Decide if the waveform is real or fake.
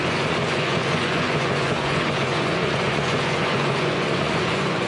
fake